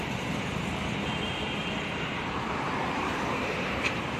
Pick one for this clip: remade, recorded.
remade